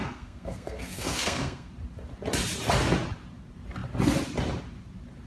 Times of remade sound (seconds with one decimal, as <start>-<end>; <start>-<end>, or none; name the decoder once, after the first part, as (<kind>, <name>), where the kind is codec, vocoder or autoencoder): 0.0-1.7 (codec, SNAC)